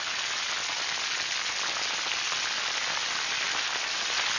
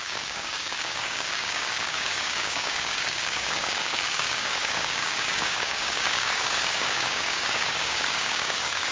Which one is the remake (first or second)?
second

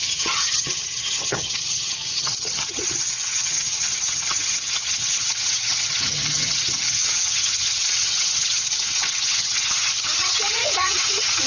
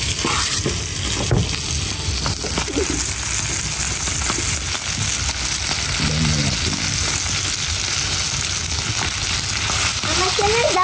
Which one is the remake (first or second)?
first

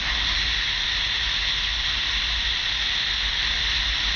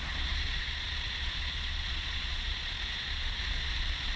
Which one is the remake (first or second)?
second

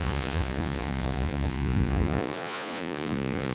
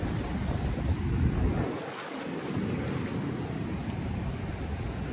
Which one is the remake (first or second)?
first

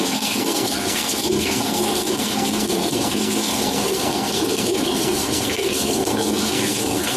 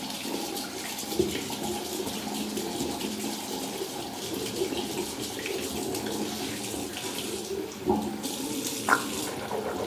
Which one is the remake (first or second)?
first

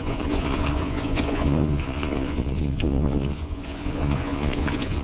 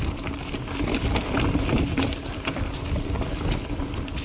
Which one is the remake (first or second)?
first